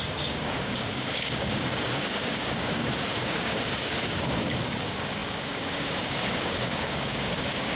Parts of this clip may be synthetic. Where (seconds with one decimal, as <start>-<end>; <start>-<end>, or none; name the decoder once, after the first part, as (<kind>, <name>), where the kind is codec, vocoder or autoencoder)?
0.0-7.8 (codec, DAC)

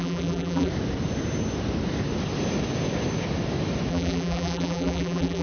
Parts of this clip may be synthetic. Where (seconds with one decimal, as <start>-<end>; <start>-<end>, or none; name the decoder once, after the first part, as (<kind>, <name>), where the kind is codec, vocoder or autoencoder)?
0.0-0.7 (vocoder, BigVGAN v2); 3.9-5.4

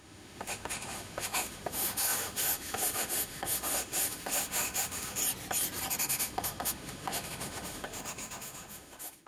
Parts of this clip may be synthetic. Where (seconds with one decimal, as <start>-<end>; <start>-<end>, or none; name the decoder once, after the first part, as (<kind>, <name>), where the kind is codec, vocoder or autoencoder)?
0.0-5.2 (autoencoder, DAC-VAE); 6.0-9.3

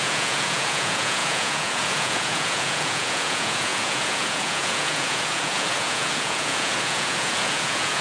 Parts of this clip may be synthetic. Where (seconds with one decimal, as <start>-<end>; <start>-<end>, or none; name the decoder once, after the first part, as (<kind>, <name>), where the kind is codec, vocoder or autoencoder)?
0.0-8.0 (vocoder, Vocos)

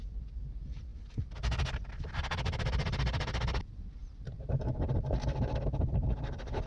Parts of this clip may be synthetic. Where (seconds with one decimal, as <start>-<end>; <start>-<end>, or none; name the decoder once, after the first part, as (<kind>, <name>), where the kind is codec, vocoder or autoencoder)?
4.0-4.7 (vocoder, BigVGAN v2)

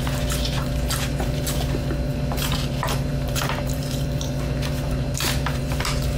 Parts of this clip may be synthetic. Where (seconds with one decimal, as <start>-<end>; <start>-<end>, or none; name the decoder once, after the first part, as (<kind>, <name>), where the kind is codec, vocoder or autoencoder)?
0.0-6.2 (vocoder, BigVGAN v2)